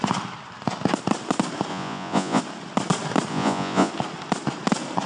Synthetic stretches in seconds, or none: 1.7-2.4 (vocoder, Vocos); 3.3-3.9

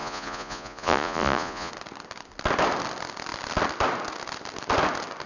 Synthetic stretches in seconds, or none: 0.0-1.7 (vocoder, Vocos)

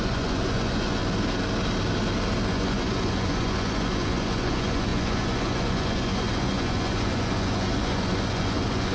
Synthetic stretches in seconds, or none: 0.0-1.0 (vocoder, Vocos); 2.5-8.9

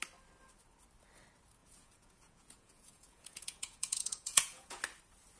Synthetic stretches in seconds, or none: 1.6-4.8 (vocoder, Vocos)

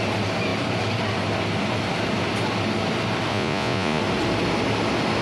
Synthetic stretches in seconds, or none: 3.3-4.0 (vocoder, Vocos)

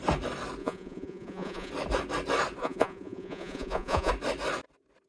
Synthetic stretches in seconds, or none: 0.6-1.7 (vocoder, Vocos); 2.6-4.1

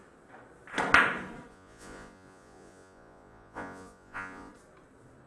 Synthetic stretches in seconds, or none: 1.5-4.5 (vocoder, Vocos)

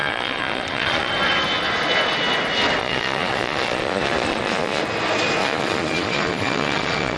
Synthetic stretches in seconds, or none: 0.0-1.1 (vocoder, Vocos); 2.8-4.8; 5.4-7.2